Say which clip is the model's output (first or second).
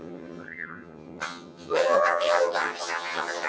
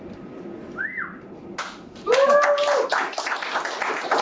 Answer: first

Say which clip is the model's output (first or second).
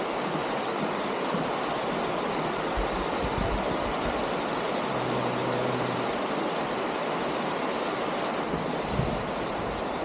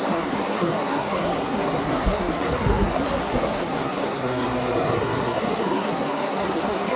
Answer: second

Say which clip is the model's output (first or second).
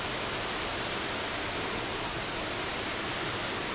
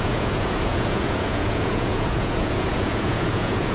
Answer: second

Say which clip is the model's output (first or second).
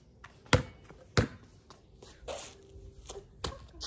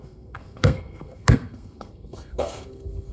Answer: second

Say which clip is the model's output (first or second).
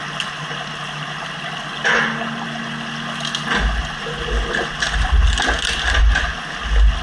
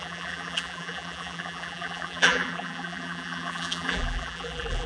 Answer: second